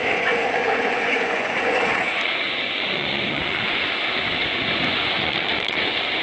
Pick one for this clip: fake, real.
fake